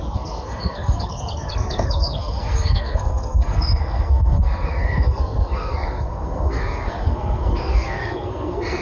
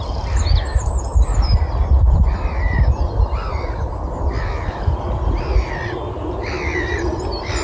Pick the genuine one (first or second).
second